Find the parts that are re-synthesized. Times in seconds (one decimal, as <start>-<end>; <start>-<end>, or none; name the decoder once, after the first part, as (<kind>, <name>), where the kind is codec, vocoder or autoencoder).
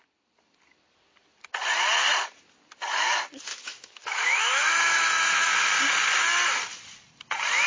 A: 3.5-5.6 (autoencoder, DAC-VAE)